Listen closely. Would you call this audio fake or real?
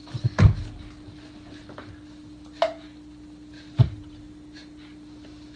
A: real